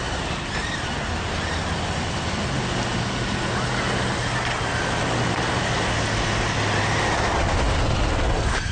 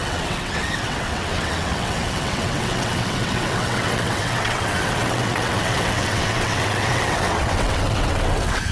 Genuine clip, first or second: first